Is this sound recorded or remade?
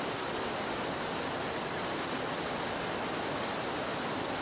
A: recorded